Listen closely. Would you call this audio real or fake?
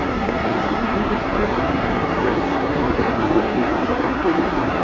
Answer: fake